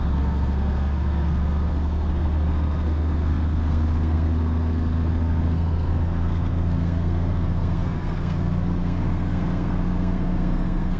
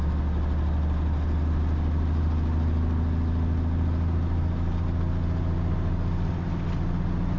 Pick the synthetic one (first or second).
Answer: first